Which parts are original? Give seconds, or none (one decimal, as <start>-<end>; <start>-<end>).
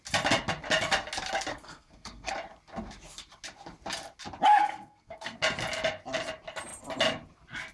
0.0-1.5; 2.3-4.5; 5.4-7.7